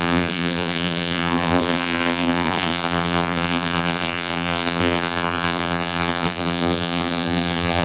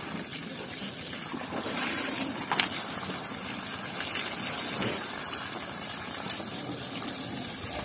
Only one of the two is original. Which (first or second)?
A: second